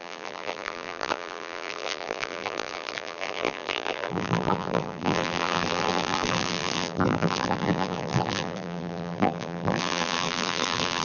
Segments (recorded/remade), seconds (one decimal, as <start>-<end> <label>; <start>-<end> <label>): 0.0-11.0 remade